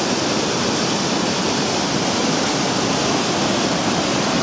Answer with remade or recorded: recorded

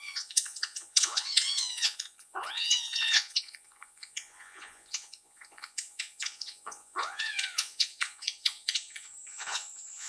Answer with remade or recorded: remade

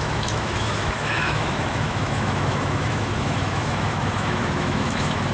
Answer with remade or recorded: remade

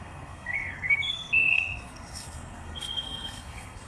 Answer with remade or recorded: remade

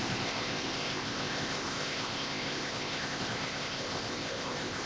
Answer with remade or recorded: remade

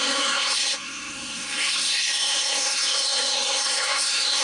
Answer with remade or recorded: remade